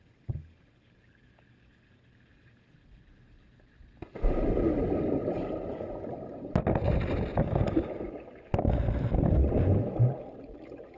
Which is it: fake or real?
real